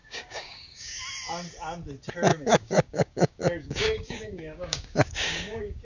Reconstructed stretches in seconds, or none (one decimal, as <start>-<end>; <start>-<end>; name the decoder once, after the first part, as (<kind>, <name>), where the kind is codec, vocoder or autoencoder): 0.0-1.0 (codec, DAC); 2.3-5.8